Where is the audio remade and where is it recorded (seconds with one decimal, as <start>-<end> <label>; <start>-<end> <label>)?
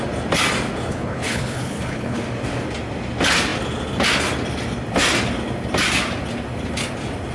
0.0-0.9 recorded; 0.9-2.2 remade; 2.2-7.3 recorded